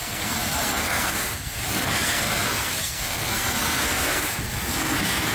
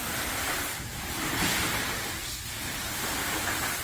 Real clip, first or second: second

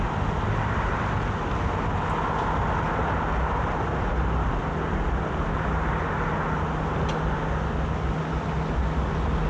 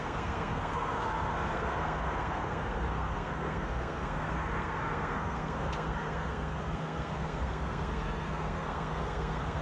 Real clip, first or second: first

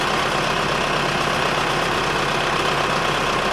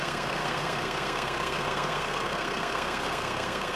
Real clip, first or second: first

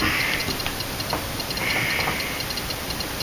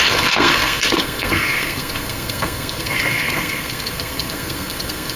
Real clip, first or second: first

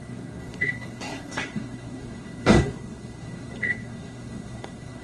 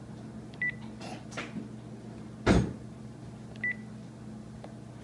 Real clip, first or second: second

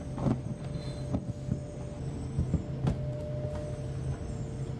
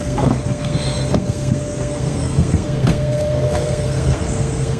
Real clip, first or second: first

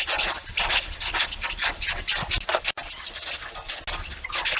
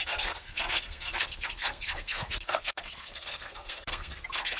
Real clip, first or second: first